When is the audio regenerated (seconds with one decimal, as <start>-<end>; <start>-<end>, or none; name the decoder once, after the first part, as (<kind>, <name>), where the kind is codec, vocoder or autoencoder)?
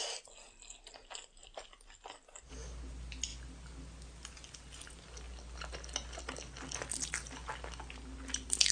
none